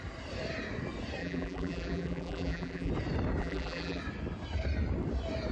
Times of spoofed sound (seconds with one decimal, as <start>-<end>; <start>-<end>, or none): 1.2-2.9; 3.4-4.0